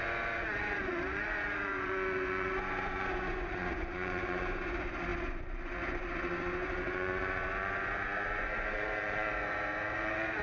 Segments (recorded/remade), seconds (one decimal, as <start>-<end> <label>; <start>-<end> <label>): 0.0-10.4 remade